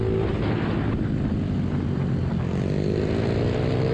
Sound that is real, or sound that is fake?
real